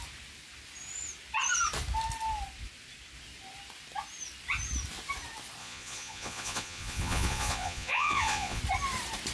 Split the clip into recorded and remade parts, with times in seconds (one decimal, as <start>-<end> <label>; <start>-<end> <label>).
0.0-5.6 recorded; 5.6-8.6 remade; 8.6-9.3 recorded

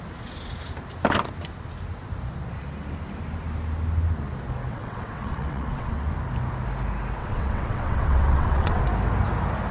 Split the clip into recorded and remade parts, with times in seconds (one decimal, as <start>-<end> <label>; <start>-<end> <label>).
0.0-4.7 recorded; 4.7-6.1 remade; 6.1-7.2 recorded; 7.2-8.8 remade; 8.8-9.7 recorded

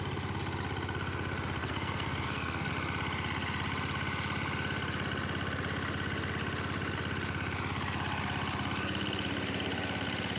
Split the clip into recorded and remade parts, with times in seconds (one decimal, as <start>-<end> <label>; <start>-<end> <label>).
0.0-1.6 recorded; 1.6-2.7 remade; 2.7-10.4 recorded

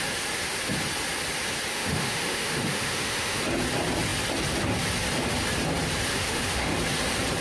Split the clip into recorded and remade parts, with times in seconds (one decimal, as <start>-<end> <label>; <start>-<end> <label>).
0.0-1.7 recorded; 1.7-3.4 remade; 3.4-6.1 recorded; 6.1-6.7 remade; 6.7-7.4 recorded

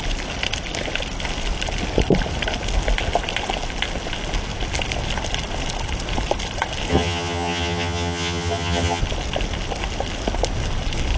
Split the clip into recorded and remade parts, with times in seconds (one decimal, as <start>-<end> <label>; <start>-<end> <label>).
0.0-6.9 recorded; 6.9-9.0 remade; 9.0-11.2 recorded

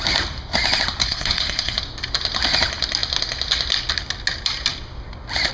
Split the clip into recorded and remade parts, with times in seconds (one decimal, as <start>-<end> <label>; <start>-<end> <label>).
0.0-1.0 recorded; 1.0-1.8 remade; 1.8-5.5 recorded